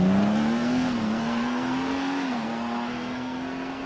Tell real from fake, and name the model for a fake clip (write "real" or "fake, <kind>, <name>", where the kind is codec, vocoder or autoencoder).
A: fake, codec, SNAC